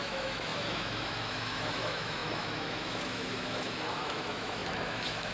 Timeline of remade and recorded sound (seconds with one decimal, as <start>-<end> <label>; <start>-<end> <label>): 0.0-5.3 remade